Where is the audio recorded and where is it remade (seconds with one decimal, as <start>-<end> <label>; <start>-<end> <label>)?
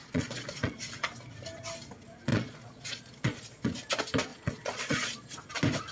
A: 0.0-0.8 remade; 0.8-2.3 recorded; 2.3-3.6 remade; 3.6-4.3 recorded; 4.3-5.5 remade; 5.5-5.9 recorded